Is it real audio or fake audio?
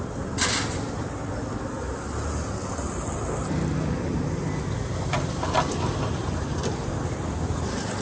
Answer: real